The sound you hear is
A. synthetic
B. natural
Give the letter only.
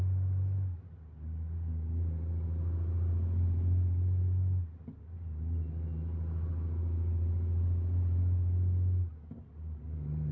B